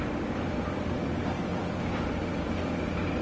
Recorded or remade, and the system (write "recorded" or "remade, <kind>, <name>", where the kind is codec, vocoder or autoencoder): remade, vocoder, BigVGAN v2